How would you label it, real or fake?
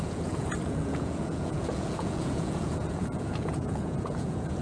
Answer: fake